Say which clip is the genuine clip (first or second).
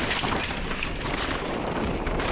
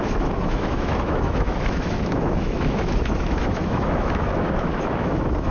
first